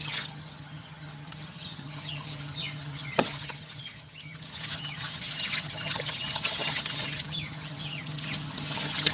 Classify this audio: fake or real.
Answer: fake